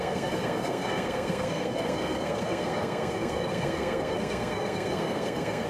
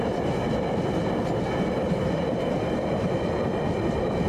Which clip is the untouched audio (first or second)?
second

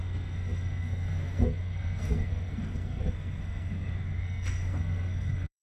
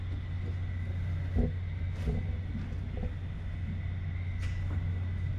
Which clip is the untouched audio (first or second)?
second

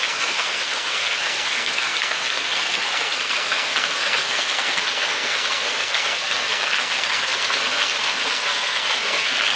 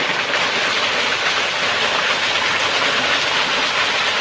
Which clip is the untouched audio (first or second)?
second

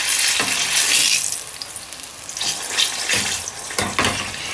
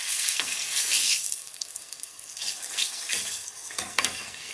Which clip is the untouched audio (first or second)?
first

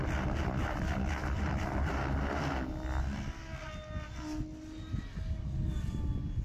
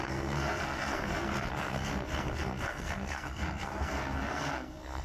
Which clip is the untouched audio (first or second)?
first